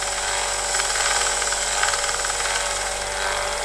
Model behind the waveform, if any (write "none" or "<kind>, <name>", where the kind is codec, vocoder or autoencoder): none